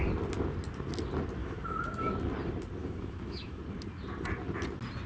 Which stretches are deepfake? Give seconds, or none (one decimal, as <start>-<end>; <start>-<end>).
1.4-2.1; 2.8-3.6